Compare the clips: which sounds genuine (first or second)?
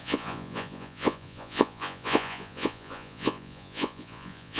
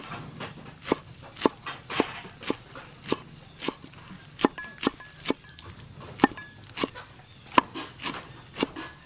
second